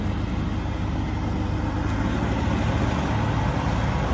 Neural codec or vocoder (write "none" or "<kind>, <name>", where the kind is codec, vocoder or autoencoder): none